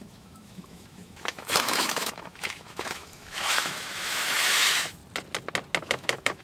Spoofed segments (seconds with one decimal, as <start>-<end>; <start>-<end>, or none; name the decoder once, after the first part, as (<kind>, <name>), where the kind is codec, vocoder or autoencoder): 0.0-5.0 (autoencoder, DAC-VAE); 5.8-6.4